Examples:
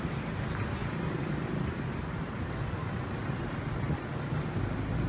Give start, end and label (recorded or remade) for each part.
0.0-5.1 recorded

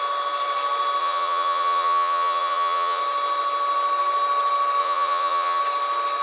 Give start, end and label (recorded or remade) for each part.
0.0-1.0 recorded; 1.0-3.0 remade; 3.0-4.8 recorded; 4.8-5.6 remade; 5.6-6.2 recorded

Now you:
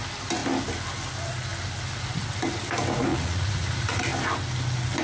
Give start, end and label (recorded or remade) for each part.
0.0-3.1 recorded; 3.1-4.0 remade; 4.0-5.0 recorded